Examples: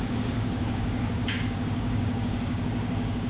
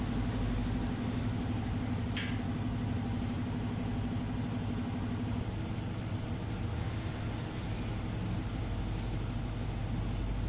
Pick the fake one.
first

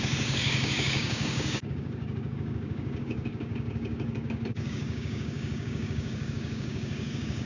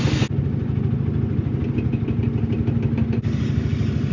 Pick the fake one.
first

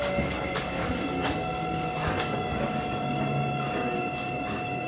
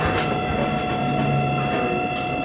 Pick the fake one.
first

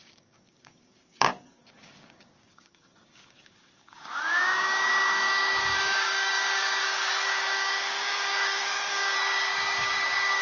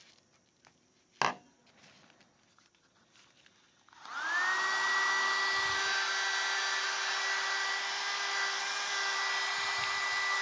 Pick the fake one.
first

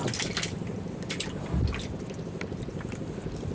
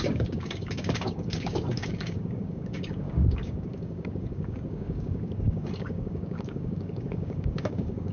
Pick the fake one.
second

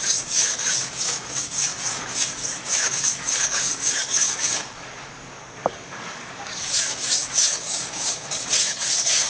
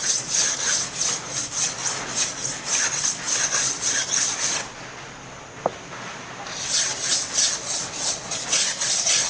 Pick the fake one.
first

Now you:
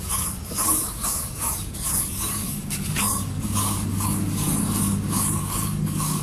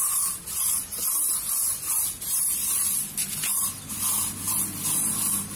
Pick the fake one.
first